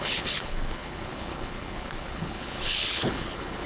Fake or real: fake